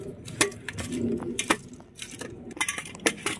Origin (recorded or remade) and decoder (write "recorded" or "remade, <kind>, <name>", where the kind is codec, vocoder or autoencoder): recorded